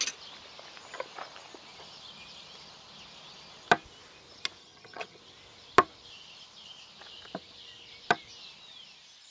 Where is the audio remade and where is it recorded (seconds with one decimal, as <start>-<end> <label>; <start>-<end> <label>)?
0.0-4.6 recorded; 4.6-5.2 remade; 5.2-9.3 recorded